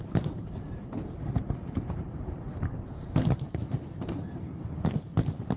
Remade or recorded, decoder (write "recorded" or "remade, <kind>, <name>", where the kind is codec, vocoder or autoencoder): remade, vocoder, BigVGAN v2